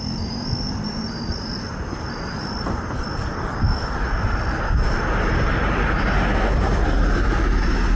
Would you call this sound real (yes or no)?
yes